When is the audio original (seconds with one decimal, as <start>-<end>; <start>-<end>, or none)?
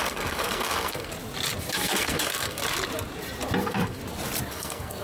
1.1-1.7; 2.6-3.6; 4.0-4.5